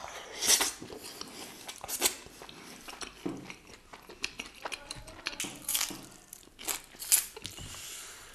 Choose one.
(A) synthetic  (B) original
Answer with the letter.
B